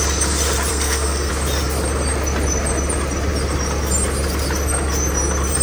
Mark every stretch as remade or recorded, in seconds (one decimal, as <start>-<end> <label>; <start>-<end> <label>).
0.0-0.7 recorded; 0.7-1.3 remade; 1.3-5.6 recorded